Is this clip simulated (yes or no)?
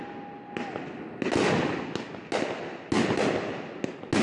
no